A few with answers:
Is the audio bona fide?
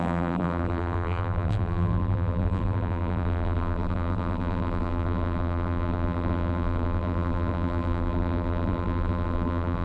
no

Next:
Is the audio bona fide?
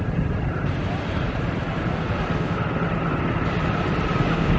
yes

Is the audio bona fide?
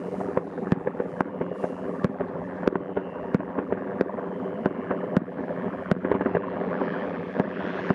no